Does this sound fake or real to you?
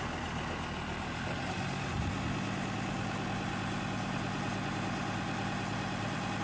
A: real